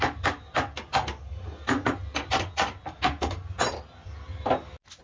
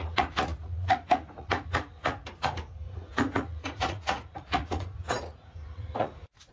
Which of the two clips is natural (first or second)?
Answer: first